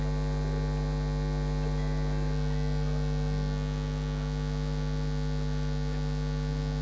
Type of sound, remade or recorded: recorded